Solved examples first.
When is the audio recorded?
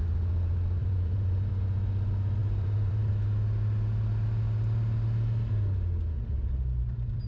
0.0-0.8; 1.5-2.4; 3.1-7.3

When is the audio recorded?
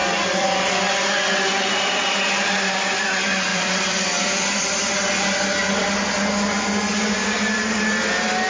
0.7-3.5; 4.9-8.5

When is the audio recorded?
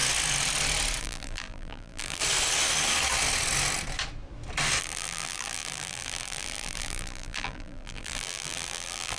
0.0-1.0; 2.2-4.8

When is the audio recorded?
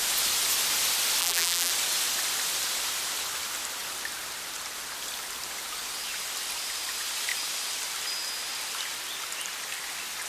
0.0-1.2; 1.7-10.3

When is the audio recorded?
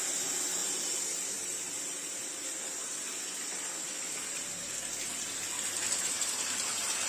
0.6-1.8; 2.2-6.0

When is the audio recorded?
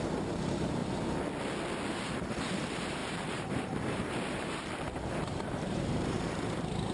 0.8-1.9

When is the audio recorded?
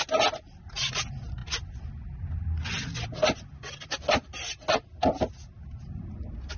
0.0-6.6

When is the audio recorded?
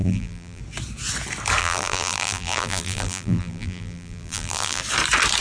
0.6-1.6; 4.8-5.4